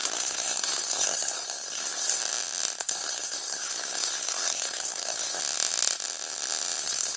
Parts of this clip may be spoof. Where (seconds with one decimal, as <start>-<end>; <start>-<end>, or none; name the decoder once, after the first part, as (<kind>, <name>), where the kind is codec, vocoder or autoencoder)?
0.0-2.2 (codec, SNAC); 2.8-5.4; 6.8-7.2